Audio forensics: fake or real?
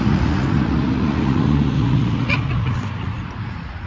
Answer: fake